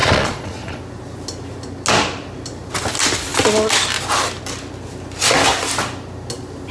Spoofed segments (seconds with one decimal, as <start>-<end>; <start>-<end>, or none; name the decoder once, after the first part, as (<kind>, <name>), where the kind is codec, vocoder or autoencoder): 0.0-0.8 (vocoder, Vocos)